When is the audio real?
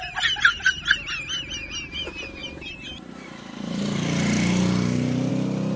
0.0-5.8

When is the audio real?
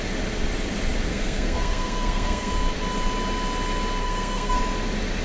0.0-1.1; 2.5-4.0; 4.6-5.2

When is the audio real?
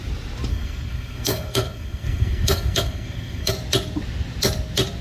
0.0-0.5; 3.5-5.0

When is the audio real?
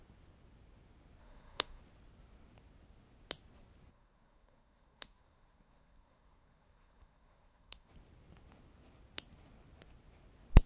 0.0-1.2; 1.8-3.9; 7.9-10.7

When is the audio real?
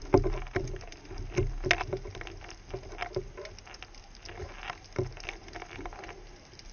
0.0-6.7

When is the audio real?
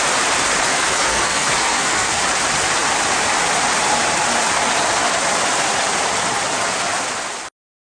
0.0-0.7; 2.2-8.0